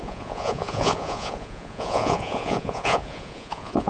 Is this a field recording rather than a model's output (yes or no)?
no